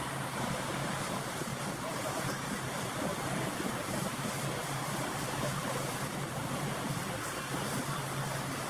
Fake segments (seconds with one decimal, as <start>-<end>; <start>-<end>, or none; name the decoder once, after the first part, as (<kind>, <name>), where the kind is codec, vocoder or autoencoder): 1.5-2.7 (vocoder, BigVGAN v2); 4.6-6.8